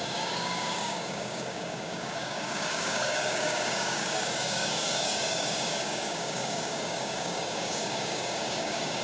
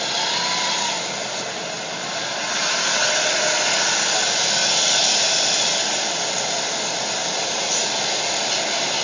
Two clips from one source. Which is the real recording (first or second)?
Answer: second